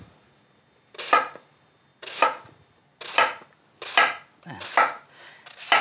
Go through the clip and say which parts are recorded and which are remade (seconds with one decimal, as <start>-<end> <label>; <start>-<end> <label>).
0.0-5.8 recorded